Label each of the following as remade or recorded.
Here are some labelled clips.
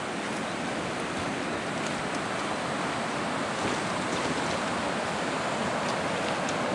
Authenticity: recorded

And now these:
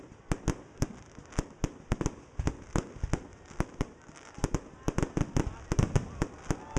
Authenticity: recorded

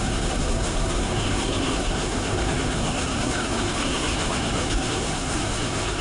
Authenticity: remade